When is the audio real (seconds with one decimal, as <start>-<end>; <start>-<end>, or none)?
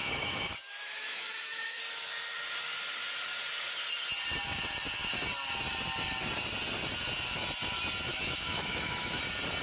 1.8-8.1; 9.2-9.6